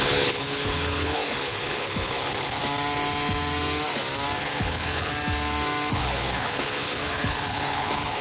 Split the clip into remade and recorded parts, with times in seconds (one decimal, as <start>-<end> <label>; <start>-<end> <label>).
0.0-2.6 remade; 2.6-4.4 recorded; 4.4-5.1 remade; 5.1-5.9 recorded; 5.9-8.2 remade